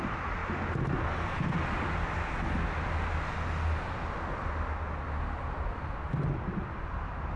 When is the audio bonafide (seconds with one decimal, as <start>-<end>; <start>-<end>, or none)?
0.0-7.4